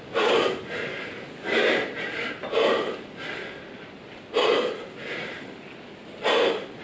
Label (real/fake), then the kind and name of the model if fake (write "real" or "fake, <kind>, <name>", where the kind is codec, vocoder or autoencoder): real